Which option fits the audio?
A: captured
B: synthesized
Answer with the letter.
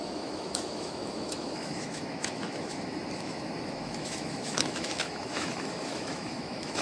B